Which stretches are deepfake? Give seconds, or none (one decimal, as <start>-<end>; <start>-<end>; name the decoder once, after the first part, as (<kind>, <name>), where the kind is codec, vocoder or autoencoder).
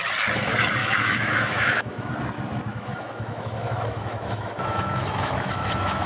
0.8-2.1 (autoencoder, DAC-VAE); 2.7-6.1